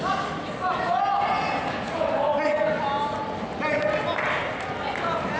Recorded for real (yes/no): yes